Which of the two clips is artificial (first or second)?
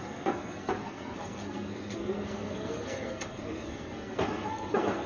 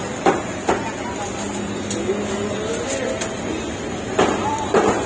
first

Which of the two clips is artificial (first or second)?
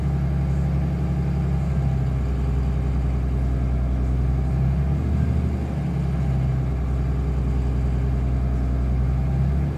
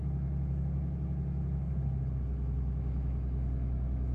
second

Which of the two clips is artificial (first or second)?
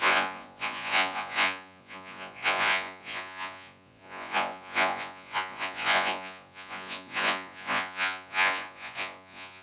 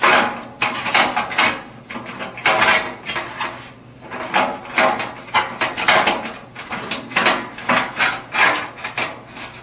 first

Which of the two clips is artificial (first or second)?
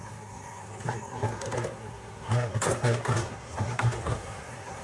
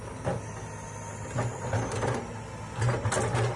first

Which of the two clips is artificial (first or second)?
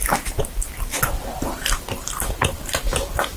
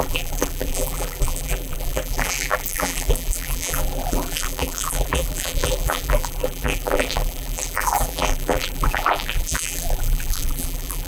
second